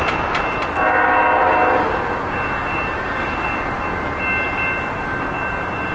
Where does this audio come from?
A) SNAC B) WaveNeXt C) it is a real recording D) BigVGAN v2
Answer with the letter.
C